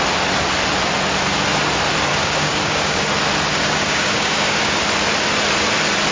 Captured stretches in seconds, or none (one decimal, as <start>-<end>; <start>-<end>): 0.0-2.1; 3.1-3.5; 4.8-6.1